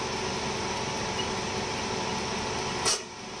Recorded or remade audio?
recorded